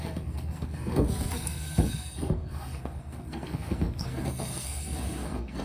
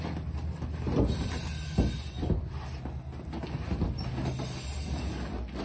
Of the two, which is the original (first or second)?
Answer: second